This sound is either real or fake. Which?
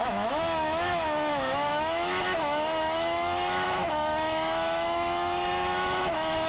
fake